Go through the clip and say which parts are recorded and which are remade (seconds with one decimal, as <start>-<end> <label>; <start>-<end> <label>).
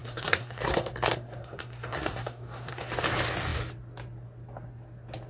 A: 0.0-2.9 remade; 2.9-5.3 recorded